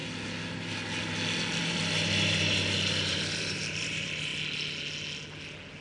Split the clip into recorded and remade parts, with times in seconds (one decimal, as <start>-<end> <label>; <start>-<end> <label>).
0.0-1.6 recorded; 1.6-4.3 remade; 4.3-5.8 recorded